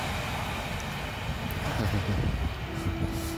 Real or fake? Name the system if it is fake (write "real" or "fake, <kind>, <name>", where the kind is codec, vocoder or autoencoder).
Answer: real